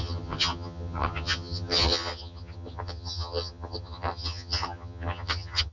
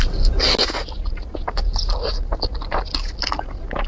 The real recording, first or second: second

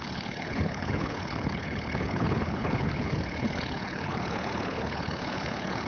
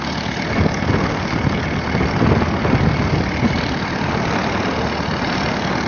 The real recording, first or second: second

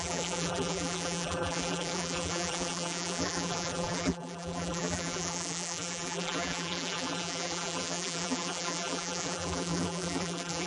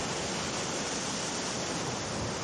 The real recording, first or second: second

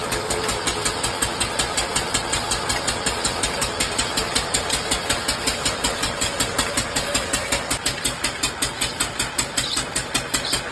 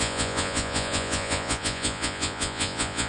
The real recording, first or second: first